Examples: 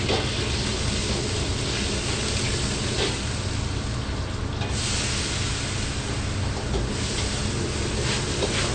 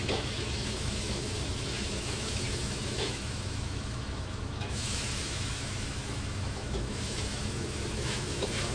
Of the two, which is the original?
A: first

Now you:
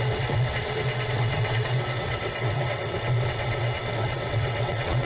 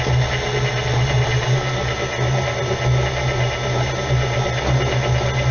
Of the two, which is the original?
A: second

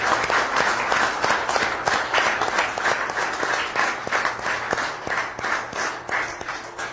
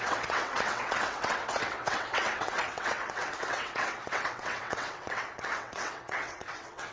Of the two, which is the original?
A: first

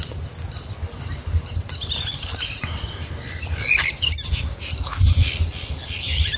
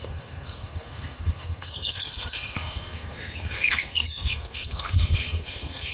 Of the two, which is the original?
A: first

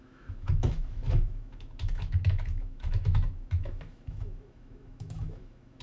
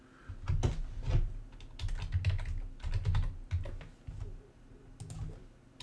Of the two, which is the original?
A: second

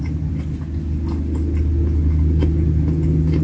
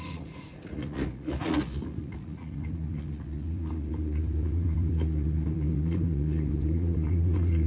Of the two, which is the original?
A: first